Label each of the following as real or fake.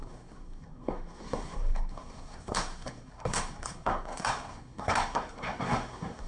fake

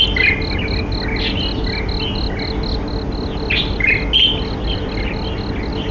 real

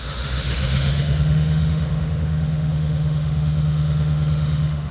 fake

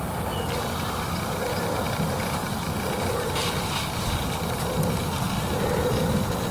real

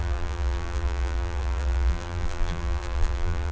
fake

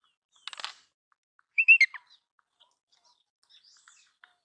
real